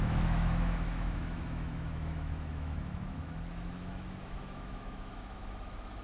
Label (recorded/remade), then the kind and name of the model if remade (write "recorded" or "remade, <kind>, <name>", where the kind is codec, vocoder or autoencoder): remade, autoencoder, DAC-VAE